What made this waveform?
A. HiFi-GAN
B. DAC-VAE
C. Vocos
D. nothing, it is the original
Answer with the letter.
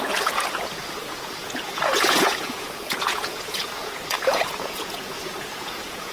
C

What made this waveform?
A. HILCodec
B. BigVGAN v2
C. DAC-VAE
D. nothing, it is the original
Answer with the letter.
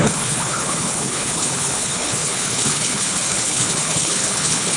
A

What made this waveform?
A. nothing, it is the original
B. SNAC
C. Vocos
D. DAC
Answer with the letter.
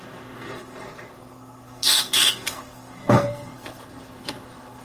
B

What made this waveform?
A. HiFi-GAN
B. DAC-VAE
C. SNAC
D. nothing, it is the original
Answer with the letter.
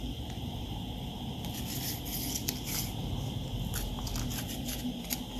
D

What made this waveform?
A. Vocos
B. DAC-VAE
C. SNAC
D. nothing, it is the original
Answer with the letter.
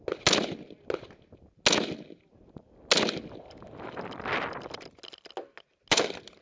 D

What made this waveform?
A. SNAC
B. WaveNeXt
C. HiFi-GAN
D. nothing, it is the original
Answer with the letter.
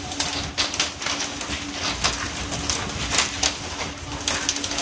D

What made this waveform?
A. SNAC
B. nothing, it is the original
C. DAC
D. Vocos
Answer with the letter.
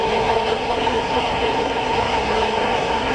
A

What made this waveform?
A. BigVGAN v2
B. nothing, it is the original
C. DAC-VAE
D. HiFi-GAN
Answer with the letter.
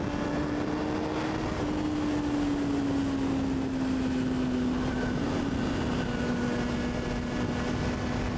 B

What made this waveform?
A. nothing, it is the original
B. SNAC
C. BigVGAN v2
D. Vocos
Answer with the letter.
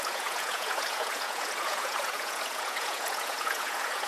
D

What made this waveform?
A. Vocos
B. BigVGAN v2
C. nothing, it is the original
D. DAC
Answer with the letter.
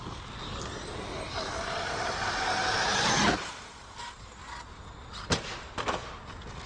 C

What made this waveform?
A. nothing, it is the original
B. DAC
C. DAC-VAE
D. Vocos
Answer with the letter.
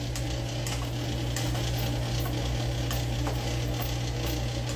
A